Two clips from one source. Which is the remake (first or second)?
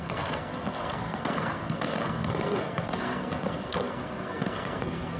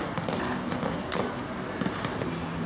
first